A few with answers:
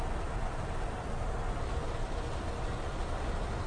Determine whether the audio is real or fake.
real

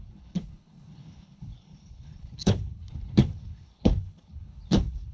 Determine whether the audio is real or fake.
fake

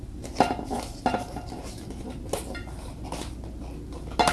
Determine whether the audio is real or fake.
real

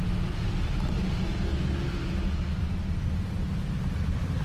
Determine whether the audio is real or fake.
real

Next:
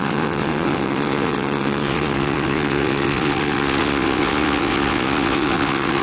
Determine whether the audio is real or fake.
fake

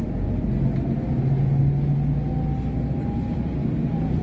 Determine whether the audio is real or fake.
real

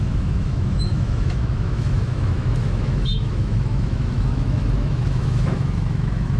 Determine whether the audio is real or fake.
fake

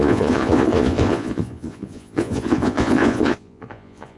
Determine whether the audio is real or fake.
fake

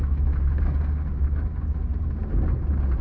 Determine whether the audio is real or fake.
real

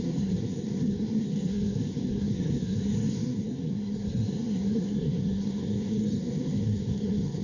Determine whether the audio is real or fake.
fake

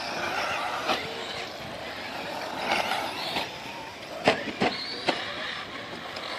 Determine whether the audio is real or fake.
real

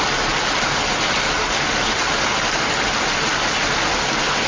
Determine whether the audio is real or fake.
real